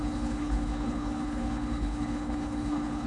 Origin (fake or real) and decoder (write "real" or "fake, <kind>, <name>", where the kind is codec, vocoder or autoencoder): fake, codec, HILCodec